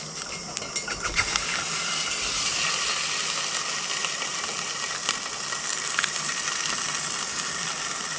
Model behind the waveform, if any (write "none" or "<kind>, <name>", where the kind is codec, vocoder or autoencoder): none